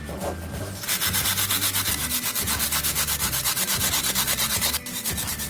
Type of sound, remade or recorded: recorded